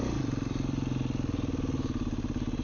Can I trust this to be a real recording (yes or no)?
yes